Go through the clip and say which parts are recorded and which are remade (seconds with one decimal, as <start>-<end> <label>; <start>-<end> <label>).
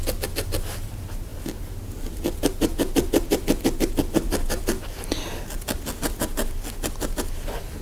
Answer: 0.0-7.8 recorded